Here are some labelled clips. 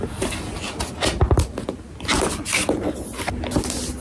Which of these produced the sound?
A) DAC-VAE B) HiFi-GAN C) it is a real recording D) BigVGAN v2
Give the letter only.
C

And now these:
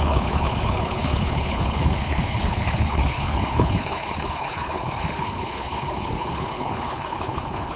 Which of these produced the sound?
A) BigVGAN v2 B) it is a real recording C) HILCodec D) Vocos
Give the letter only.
C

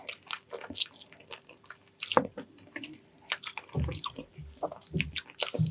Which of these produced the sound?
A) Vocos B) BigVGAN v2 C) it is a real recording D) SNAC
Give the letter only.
C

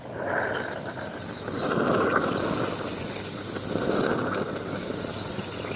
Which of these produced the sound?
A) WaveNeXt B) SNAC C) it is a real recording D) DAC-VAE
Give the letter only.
C